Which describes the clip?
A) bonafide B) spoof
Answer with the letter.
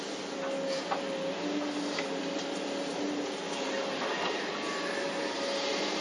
A